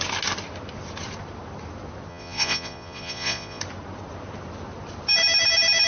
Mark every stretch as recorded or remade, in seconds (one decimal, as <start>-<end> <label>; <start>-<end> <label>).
0.0-2.1 recorded; 2.1-3.6 remade; 3.6-5.9 recorded